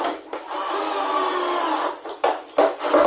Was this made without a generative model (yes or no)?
yes